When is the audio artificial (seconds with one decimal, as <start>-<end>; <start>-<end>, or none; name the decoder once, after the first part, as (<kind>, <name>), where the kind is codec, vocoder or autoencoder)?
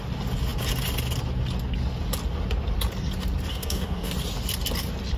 3.5-4.1 (codec, DAC)